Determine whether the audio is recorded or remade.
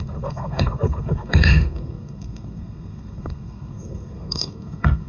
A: remade